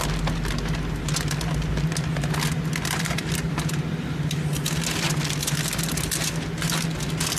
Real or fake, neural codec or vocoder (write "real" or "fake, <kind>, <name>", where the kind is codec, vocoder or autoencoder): real